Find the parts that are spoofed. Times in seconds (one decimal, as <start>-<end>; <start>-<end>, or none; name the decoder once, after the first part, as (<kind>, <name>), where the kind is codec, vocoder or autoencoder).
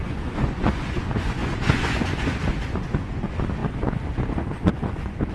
0.0-5.3 (vocoder, Vocos)